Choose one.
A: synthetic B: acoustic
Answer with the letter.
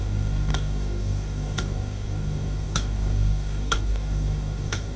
A